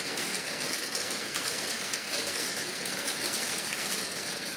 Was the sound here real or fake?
fake